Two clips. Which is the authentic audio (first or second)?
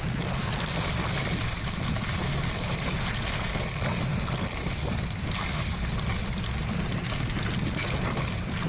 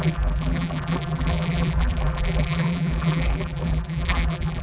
first